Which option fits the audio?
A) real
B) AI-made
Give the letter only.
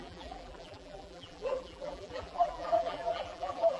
B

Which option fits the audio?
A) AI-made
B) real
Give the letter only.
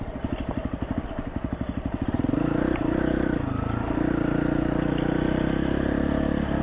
B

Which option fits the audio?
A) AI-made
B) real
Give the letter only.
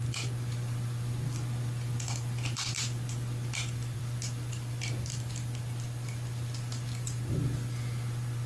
A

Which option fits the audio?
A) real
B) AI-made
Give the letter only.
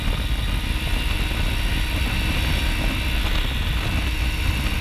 A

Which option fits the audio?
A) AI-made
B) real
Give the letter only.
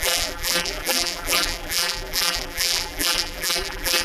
A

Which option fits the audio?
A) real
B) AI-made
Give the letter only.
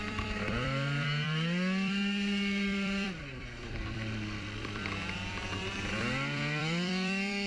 B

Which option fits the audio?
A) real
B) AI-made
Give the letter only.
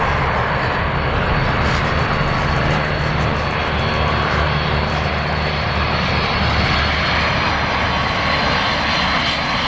A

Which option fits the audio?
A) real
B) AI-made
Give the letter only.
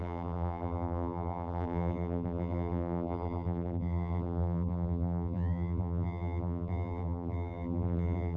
B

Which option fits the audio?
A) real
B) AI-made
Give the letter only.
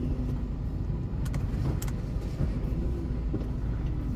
A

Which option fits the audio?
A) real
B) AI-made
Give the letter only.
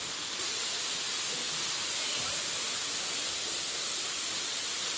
B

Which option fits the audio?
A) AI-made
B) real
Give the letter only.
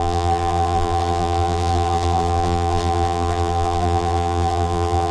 A